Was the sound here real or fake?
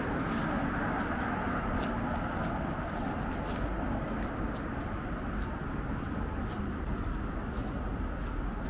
real